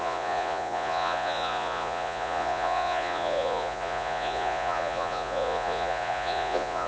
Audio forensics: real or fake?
fake